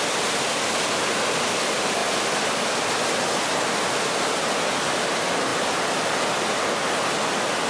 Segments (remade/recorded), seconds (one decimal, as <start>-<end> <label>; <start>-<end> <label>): 0.0-7.7 recorded